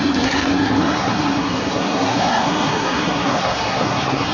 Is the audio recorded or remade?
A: remade